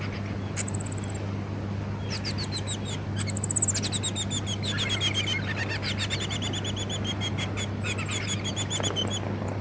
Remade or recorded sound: recorded